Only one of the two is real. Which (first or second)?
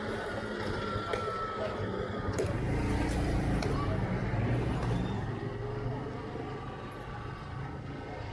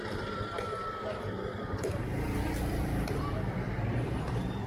first